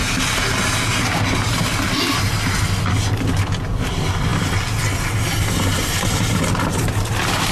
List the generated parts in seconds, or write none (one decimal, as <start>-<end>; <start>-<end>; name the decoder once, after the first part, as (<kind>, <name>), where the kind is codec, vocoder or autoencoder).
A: none